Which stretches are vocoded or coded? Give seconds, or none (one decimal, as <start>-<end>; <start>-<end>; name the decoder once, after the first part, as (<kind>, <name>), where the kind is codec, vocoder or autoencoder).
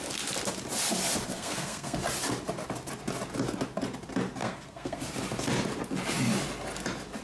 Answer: 1.3-2.0 (codec, SNAC); 4.4-5.0